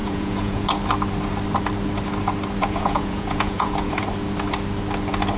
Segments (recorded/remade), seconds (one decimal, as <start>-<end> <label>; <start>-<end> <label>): 0.0-0.7 remade; 0.7-2.6 recorded; 2.6-4.0 remade; 4.0-5.4 recorded